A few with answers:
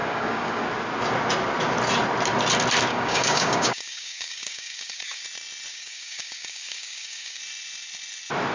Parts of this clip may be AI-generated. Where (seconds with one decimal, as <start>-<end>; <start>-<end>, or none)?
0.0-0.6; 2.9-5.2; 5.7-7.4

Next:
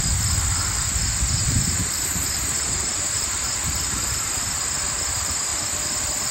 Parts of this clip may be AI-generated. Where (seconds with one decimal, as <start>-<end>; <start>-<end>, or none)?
1.4-3.4

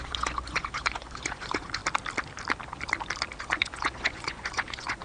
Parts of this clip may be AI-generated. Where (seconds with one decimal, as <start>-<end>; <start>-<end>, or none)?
0.0-1.8; 3.4-5.0

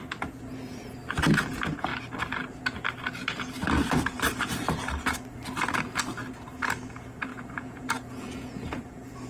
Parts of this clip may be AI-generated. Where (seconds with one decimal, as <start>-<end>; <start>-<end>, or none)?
7.3-8.8

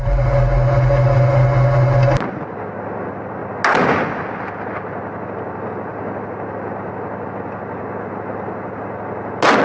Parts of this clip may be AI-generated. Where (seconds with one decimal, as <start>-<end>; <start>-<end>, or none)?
none

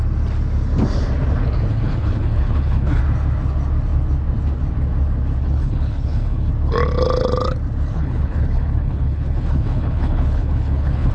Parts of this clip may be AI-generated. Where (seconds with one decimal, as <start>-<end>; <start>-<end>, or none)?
1.7-3.0; 5.4-6.5; 7.9-11.1

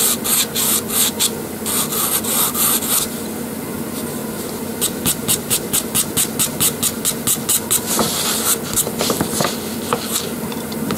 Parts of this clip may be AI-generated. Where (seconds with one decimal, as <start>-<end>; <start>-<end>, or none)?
none